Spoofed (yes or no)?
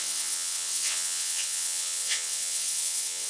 yes